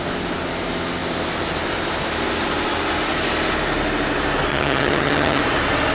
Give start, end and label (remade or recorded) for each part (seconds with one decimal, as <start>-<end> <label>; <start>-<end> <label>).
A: 0.0-4.5 recorded; 4.5-5.4 remade; 5.4-5.9 recorded